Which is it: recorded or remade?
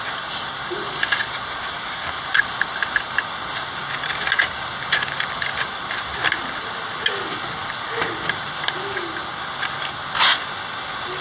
recorded